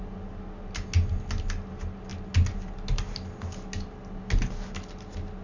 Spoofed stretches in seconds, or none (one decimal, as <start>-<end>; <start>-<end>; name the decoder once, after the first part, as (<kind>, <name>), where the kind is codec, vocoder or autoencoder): none